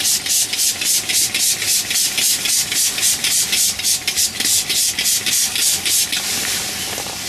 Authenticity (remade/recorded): recorded